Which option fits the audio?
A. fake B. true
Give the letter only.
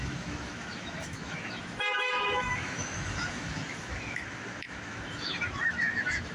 A